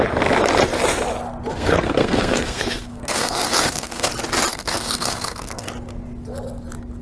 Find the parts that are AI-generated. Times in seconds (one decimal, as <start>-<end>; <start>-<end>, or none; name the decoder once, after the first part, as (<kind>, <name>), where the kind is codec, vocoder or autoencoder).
1.5-4.1 (codec, SNAC); 4.5-5.7